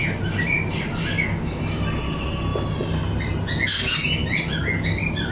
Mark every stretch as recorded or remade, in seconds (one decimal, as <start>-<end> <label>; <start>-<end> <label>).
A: 0.0-4.2 recorded; 4.2-5.3 remade